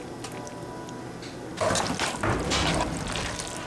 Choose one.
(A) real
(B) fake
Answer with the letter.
A